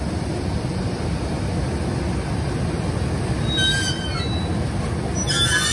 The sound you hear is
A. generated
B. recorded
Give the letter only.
B